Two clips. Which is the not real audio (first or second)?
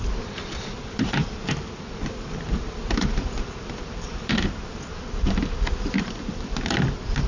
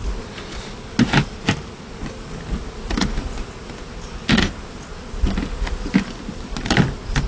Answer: first